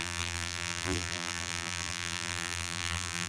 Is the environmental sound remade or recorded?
remade